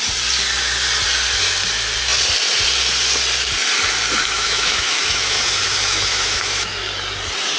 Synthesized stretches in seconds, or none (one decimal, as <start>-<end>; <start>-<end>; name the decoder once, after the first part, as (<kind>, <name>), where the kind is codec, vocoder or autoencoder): 4.2-6.7 (autoencoder, DAC-VAE)

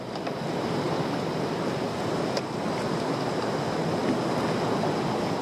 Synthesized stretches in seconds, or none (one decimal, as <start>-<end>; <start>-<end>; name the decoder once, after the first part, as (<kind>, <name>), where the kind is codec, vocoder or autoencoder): none

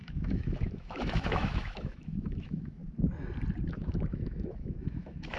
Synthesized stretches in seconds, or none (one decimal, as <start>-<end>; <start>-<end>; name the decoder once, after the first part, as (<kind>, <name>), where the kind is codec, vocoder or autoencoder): 0.0-2.8 (autoencoder, DAC-VAE); 3.7-5.4